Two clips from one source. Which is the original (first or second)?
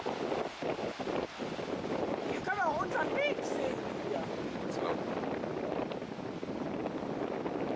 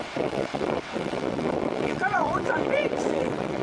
first